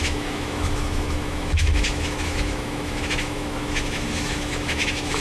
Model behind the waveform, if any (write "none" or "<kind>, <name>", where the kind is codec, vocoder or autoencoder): autoencoder, DAC-VAE